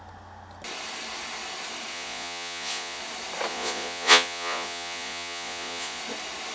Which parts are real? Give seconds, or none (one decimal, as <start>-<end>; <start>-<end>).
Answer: 0.0-1.9; 3.0-3.5; 6.0-6.5

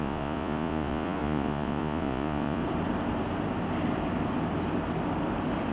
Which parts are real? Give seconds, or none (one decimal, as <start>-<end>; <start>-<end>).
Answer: 2.6-5.7